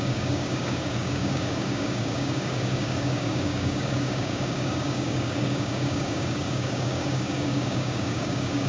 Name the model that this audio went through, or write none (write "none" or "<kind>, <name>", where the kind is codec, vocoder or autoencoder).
codec, DAC